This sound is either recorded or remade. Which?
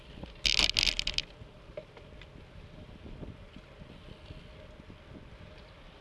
recorded